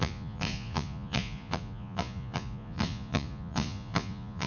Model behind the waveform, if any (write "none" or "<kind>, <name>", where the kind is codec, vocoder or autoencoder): vocoder, Vocos